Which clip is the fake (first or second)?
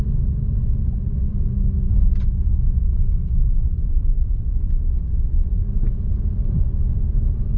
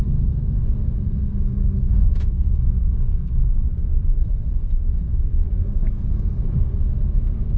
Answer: second